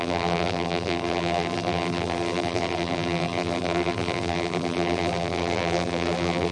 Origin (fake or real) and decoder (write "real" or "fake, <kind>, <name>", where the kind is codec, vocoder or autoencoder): fake, vocoder, BigVGAN v2